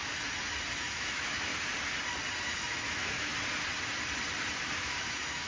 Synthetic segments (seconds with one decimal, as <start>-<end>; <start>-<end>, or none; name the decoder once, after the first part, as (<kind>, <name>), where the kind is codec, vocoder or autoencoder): 0.7-1.5 (autoencoder, DAC-VAE); 2.4-3.3; 4.8-5.5